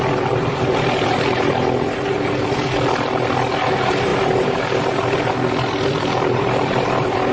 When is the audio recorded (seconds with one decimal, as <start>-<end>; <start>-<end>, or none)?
0.0-7.3